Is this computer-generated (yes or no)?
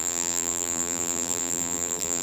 yes